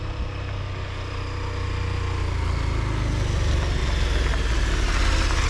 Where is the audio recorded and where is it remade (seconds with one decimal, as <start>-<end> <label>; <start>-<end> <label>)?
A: 0.0-5.5 recorded